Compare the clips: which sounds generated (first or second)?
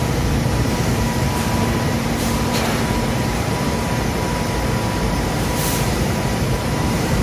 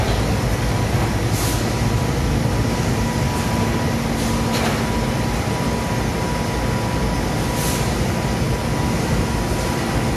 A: first